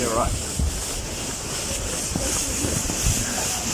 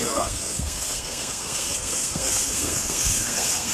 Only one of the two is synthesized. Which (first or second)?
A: second